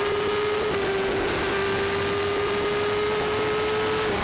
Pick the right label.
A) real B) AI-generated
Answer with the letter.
A